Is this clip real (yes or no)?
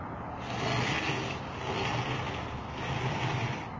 yes